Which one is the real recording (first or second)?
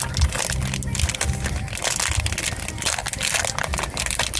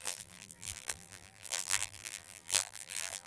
first